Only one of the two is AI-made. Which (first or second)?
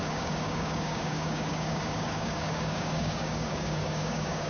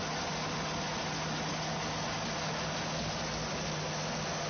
first